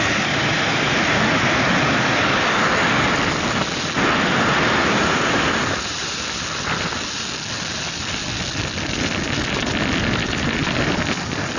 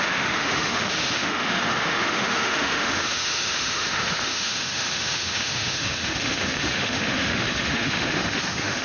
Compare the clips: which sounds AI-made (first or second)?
second